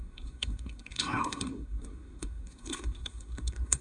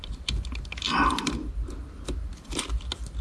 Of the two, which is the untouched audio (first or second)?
second